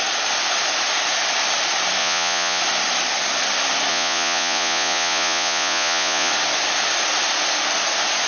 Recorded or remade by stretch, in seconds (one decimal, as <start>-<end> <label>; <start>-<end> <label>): 0.0-2.0 recorded; 2.0-2.6 remade; 2.6-3.9 recorded; 3.9-6.3 remade; 6.3-8.3 recorded